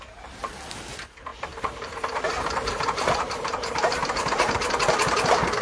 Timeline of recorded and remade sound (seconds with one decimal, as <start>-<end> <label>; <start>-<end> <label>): 0.0-1.3 recorded; 1.3-4.7 remade; 4.7-5.6 recorded